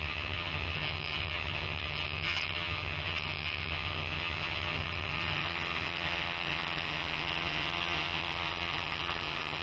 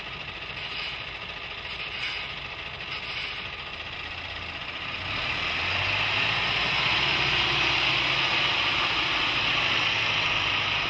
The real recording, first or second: second